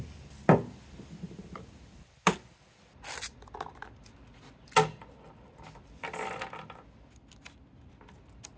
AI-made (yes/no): no